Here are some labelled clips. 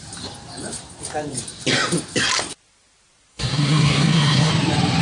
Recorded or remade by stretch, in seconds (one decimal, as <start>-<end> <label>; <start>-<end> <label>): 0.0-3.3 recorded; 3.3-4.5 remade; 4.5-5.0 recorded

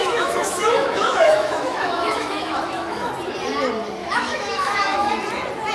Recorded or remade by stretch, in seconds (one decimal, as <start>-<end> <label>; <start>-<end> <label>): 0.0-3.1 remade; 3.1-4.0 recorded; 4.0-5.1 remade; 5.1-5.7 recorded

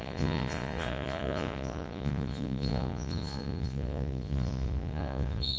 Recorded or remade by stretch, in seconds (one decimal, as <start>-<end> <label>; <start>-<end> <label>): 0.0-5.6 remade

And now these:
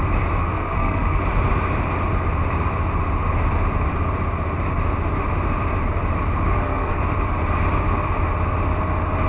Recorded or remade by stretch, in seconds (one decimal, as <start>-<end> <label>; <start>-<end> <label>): 0.0-0.4 recorded; 0.4-1.2 remade; 1.2-6.5 recorded; 6.5-7.0 remade; 7.0-9.3 recorded

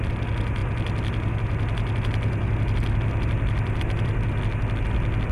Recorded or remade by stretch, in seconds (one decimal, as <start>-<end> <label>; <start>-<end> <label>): 0.0-5.3 recorded

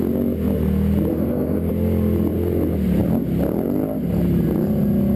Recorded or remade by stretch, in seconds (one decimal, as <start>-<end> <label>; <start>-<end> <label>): 0.0-1.1 recorded; 1.1-1.7 remade; 1.7-5.2 recorded

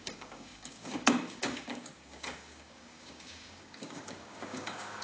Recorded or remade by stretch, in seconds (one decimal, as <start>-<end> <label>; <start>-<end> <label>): 0.0-5.0 remade

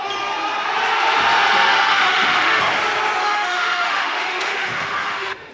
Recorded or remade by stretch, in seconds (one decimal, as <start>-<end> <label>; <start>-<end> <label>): 0.0-1.7 recorded; 1.7-2.6 remade; 2.6-3.2 recorded; 3.2-5.5 remade